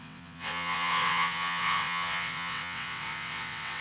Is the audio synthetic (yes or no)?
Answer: yes